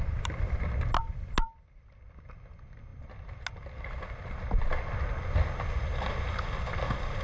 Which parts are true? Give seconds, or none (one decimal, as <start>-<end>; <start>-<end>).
0.0-7.2